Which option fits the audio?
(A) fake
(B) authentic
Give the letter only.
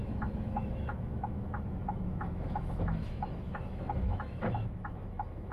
A